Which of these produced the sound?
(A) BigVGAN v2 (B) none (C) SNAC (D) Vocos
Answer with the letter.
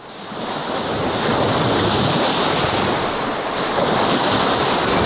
B